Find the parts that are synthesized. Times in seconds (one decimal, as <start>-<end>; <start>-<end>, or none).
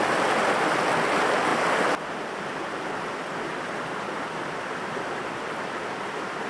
none